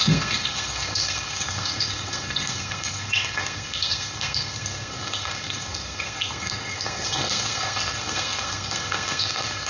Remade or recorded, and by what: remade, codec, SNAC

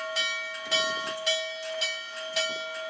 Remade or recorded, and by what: recorded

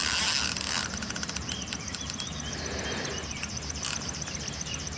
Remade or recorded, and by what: recorded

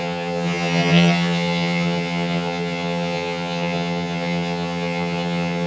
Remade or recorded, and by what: remade, vocoder, HiFi-GAN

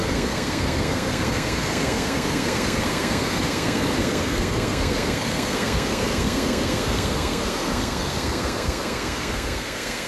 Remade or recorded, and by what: remade, codec, SNAC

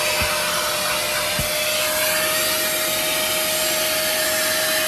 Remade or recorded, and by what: recorded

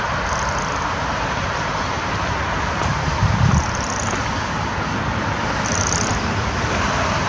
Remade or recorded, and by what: remade, vocoder, BigVGAN v2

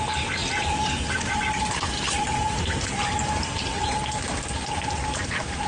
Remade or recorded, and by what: recorded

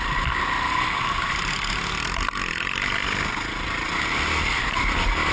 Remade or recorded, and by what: recorded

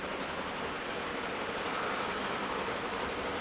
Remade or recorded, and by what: remade, vocoder, BigVGAN v2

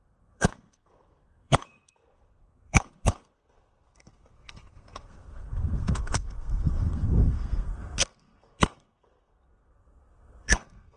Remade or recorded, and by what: remade, codec, SNAC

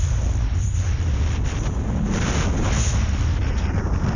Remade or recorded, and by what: recorded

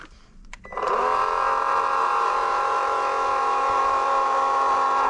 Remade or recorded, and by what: remade, vocoder, BigVGAN v2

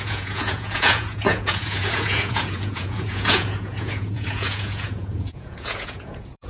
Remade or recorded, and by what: remade, vocoder, Vocos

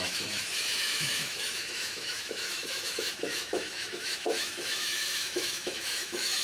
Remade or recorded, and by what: remade, autoencoder, DAC-VAE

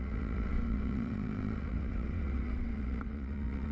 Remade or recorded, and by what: remade, vocoder, WaveNeXt